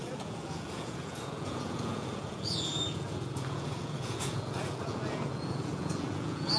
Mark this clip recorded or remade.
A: remade